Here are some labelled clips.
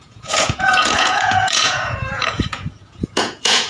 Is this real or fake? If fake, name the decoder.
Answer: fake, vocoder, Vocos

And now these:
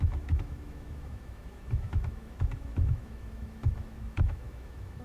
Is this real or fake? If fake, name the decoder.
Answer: fake, autoencoder, DAC-VAE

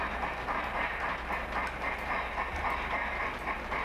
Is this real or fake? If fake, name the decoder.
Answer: real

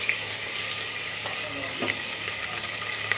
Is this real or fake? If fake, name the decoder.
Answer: fake, codec, DAC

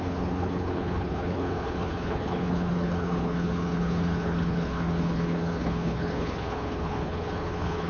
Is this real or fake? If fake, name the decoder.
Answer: fake, codec, HILCodec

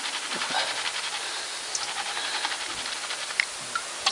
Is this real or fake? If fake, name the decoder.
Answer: real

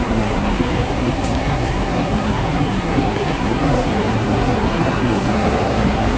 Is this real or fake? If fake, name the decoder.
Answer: fake, codec, SNAC